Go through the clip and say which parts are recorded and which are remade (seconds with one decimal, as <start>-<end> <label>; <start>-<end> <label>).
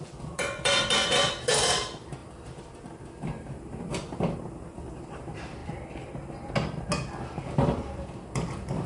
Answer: 0.0-5.6 remade; 5.6-7.4 recorded; 7.4-8.9 remade